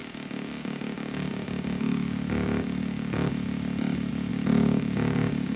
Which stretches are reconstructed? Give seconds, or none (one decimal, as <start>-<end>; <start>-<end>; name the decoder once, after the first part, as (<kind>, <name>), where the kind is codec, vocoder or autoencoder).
0.0-3.3 (codec, DAC); 4.3-5.6